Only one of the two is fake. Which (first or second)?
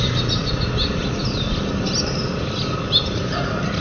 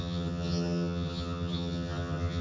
second